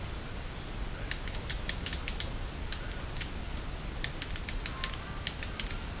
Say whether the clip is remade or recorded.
recorded